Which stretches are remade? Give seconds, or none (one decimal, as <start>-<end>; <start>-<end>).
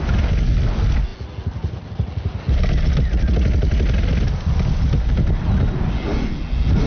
none